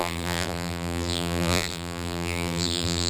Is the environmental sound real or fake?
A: fake